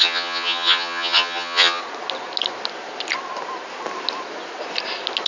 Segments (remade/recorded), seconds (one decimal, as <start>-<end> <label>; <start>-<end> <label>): 0.0-1.8 remade; 1.8-5.3 recorded